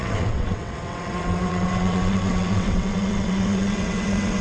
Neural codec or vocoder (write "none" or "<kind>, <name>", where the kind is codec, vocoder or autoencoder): vocoder, WaveNeXt